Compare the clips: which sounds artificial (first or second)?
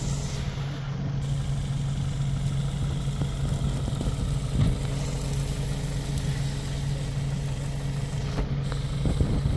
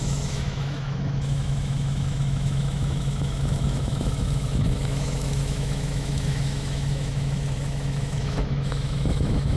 second